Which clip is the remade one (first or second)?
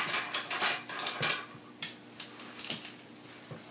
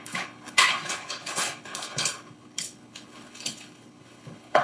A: second